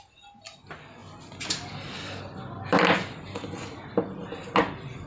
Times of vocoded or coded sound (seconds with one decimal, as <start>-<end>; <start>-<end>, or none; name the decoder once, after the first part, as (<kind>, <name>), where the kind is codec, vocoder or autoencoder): none